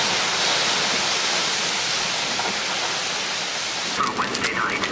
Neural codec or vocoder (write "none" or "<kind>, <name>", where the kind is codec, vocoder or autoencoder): none